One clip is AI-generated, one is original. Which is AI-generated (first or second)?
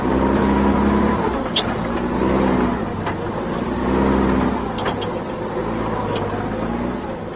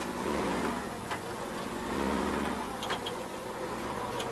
second